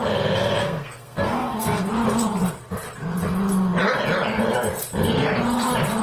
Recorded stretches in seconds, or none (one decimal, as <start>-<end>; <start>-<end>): 0.0-0.6; 1.9-6.0